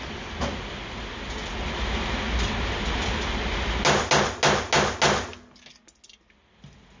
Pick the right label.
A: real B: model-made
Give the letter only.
A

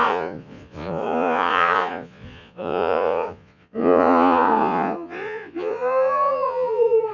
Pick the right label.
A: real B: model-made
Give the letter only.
B